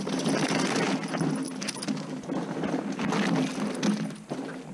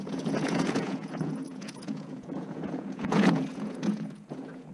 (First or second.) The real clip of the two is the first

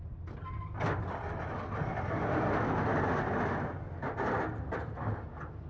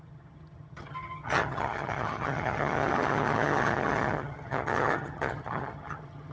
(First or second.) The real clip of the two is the first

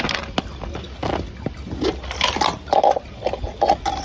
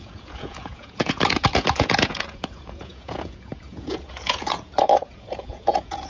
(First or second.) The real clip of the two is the first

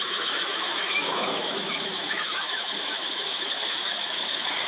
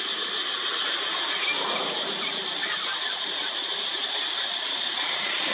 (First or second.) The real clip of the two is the second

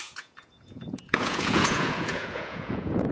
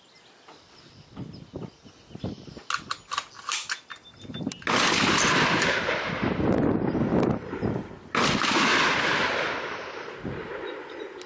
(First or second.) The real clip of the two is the second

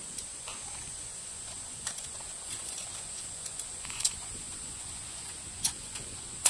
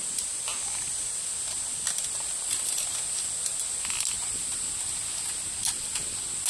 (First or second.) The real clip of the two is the second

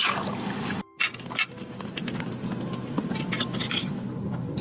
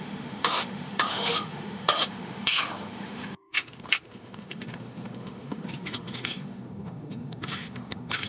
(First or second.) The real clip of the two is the first